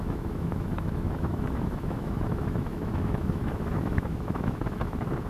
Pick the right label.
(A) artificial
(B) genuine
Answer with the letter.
A